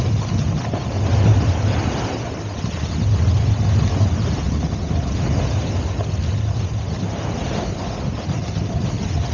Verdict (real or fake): real